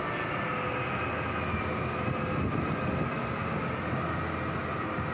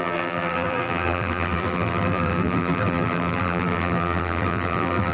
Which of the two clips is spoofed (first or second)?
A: second